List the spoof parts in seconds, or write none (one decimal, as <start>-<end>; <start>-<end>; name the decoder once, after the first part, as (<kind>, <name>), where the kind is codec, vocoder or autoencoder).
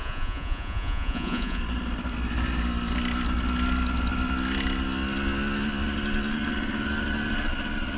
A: 0.0-1.6 (vocoder, Vocos)